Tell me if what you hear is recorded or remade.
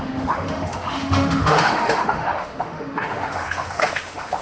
remade